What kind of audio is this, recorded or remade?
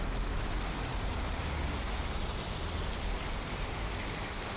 recorded